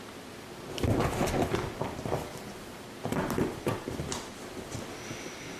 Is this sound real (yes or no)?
yes